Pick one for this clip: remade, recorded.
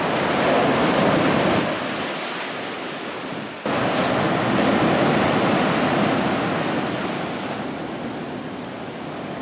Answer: recorded